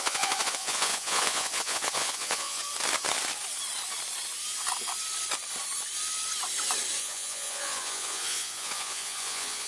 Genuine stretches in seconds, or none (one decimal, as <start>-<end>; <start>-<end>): 2.6-7.0